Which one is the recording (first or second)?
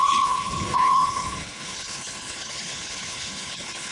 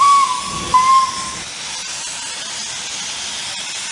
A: second